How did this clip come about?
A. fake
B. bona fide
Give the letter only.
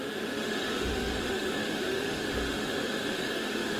A